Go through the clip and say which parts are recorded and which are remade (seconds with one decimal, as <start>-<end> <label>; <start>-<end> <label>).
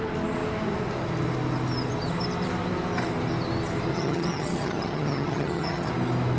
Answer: 0.0-3.9 recorded; 3.9-5.9 remade; 5.9-6.4 recorded